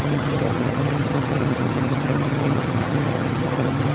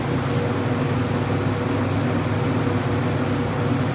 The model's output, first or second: first